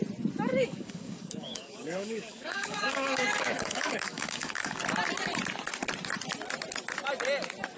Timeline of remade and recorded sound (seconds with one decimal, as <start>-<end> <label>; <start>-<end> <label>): 0.0-0.5 recorded; 0.5-4.8 remade; 4.8-7.8 recorded